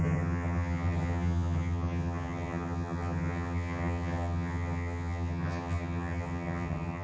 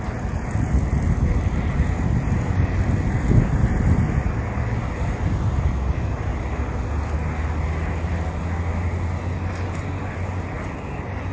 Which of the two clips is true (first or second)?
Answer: second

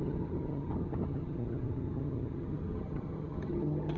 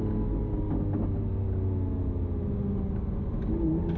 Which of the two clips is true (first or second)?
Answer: second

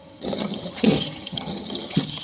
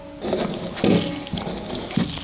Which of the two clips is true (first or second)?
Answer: second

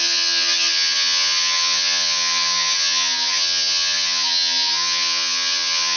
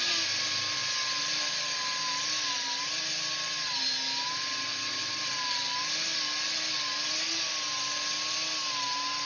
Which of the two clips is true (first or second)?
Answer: second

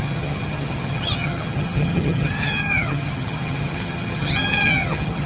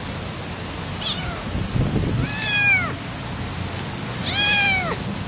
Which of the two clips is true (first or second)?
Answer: second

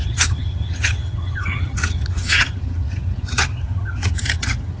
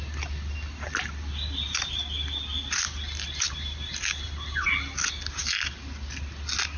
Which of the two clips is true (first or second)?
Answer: second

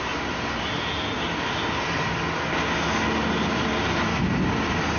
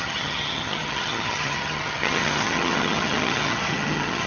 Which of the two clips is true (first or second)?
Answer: first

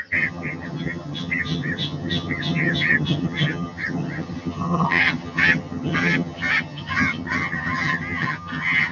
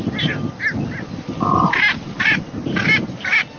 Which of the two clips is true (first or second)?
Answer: second